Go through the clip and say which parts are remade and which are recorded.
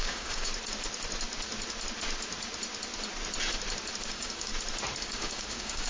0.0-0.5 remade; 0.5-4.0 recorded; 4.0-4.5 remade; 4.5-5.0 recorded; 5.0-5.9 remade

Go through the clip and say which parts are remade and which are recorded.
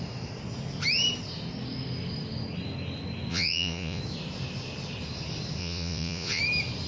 0.0-3.3 recorded; 3.3-4.0 remade; 4.0-5.6 recorded; 5.6-6.4 remade; 6.4-6.9 recorded